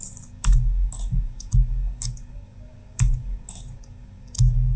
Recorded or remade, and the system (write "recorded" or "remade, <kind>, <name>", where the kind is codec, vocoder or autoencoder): remade, codec, DAC